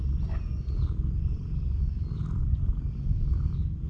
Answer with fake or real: real